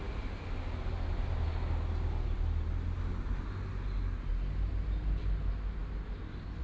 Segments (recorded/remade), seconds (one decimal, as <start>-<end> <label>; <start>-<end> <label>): 0.0-6.6 recorded